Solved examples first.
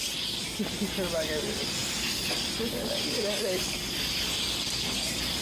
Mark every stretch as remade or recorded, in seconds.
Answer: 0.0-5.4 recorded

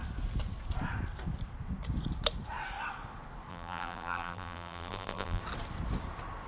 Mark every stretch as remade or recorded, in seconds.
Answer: 0.0-3.5 recorded; 3.5-5.4 remade; 5.4-6.5 recorded

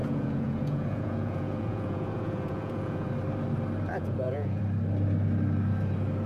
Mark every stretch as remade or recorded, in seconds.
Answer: 0.0-3.1 remade; 3.1-3.9 recorded; 3.9-4.6 remade; 4.6-6.3 recorded

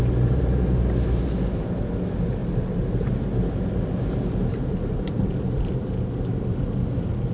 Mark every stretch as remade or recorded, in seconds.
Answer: 0.0-1.8 remade; 1.8-2.4 recorded; 2.4-3.1 remade; 3.1-4.5 recorded; 4.5-7.3 remade